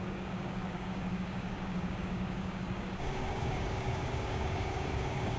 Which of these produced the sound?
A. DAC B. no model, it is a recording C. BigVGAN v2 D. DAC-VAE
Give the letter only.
A